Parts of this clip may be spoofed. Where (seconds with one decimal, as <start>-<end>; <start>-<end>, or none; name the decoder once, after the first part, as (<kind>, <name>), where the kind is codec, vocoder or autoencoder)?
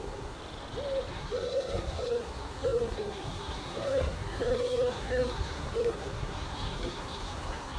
0.0-0.4 (codec, SNAC); 1.1-7.8